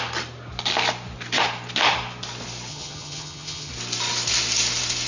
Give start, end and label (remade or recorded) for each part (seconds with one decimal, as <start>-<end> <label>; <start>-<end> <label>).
0.0-2.7 recorded; 2.7-3.7 remade; 3.7-5.1 recorded